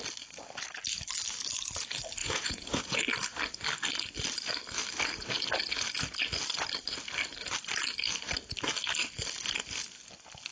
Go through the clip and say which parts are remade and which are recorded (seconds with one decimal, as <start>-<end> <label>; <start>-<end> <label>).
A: 0.0-2.2 recorded; 2.2-3.0 remade; 3.0-10.5 recorded

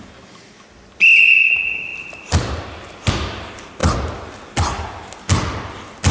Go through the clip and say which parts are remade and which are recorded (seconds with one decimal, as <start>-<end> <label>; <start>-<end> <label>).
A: 0.0-1.9 recorded; 1.9-3.1 remade; 3.1-6.1 recorded